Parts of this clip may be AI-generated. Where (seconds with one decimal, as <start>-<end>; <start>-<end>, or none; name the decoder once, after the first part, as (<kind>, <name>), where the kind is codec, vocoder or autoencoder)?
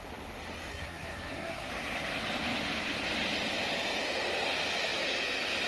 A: 0.7-1.7 (codec, SNAC)